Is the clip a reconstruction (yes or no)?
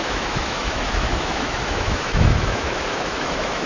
yes